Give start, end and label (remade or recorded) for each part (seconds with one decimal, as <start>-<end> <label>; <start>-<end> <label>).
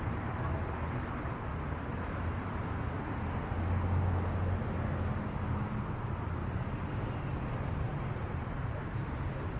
0.0-1.5 remade; 1.5-2.0 recorded; 2.0-3.4 remade; 3.4-7.9 recorded; 7.9-9.6 remade